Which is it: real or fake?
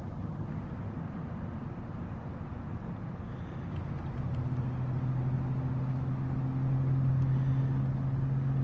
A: real